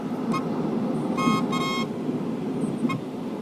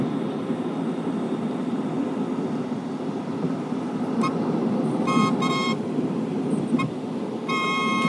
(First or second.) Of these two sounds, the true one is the first